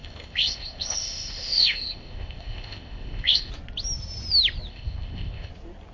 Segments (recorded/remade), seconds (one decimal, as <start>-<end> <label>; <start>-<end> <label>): 0.0-3.5 remade; 3.5-4.7 recorded; 4.7-5.5 remade; 5.5-5.9 recorded

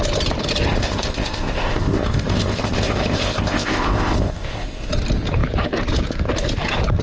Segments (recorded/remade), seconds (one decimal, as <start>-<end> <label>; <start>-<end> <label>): 0.0-0.7 recorded; 0.7-4.9 remade; 4.9-7.0 recorded

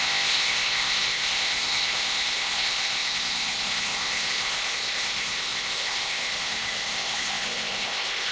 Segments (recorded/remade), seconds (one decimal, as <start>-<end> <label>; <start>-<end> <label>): 0.0-8.3 remade

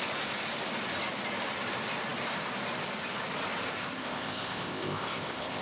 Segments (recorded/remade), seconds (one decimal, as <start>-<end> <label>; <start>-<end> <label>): 0.0-4.0 recorded; 4.0-5.6 remade

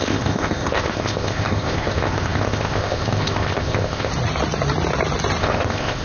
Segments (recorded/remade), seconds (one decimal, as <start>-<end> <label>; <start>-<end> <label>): 0.0-4.1 remade; 4.1-5.4 recorded; 5.4-6.0 remade

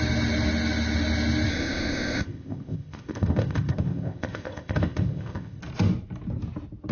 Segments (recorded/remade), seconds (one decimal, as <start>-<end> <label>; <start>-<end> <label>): 0.0-1.5 recorded; 1.5-5.6 remade; 5.6-6.9 recorded

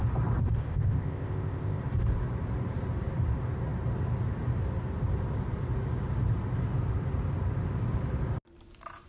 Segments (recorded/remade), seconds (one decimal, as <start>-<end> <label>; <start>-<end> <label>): 0.0-0.6 recorded; 0.6-1.8 remade; 1.8-9.1 recorded